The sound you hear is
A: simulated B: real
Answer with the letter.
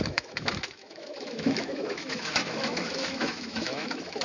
A